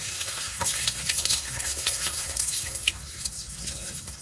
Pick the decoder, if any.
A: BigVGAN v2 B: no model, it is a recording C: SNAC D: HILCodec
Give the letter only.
C